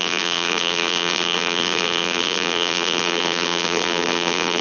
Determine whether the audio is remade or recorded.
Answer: remade